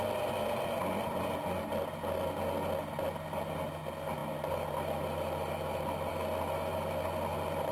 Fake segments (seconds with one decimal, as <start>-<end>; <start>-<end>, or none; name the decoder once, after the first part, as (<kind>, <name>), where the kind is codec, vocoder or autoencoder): none